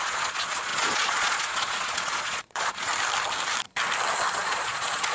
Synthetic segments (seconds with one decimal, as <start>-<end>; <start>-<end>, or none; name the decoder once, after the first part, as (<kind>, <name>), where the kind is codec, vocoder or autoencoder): 0.0-2.9 (vocoder, Vocos); 4.3-5.1